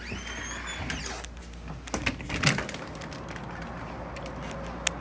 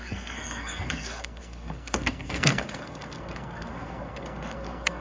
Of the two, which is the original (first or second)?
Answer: first